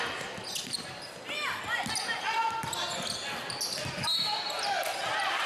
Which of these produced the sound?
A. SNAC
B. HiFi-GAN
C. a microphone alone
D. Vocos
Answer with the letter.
C